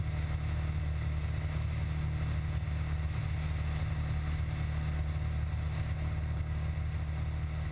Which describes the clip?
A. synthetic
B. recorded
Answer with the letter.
B